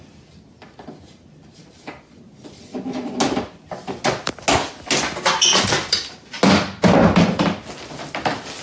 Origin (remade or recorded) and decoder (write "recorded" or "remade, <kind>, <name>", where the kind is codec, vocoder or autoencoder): recorded